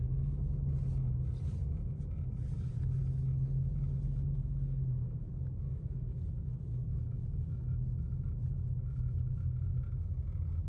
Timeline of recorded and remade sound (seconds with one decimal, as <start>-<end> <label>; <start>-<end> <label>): 0.0-10.7 recorded